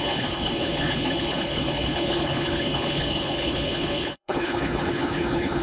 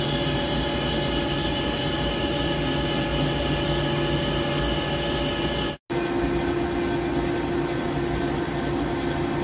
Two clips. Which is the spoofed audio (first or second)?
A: first